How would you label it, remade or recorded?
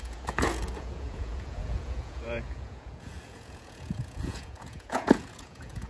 remade